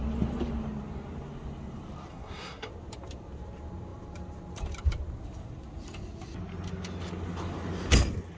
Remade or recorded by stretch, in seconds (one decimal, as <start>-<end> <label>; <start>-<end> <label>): 0.0-2.1 recorded; 2.1-2.7 remade; 2.7-8.4 recorded